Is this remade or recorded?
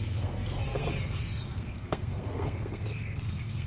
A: remade